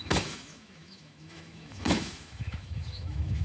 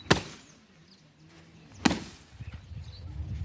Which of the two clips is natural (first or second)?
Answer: second